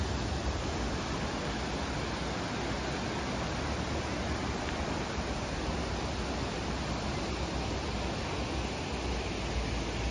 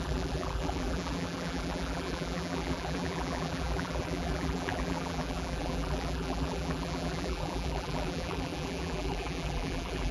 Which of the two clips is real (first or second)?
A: first